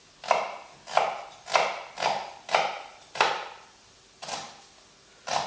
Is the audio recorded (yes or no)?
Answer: yes